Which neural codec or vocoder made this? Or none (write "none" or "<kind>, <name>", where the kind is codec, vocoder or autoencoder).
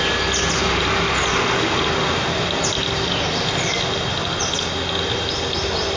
none